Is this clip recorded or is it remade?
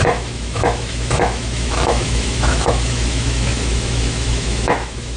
remade